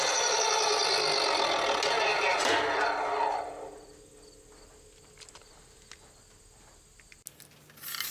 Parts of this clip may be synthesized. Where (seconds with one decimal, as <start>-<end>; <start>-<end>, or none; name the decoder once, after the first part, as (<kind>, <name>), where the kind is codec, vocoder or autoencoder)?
none